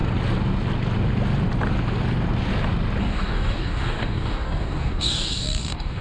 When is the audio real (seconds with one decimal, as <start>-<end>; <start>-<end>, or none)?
0.0-3.0